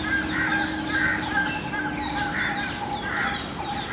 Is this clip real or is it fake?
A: real